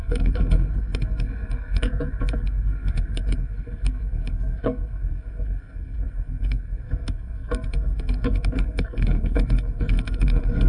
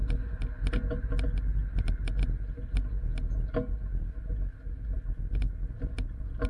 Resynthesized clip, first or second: first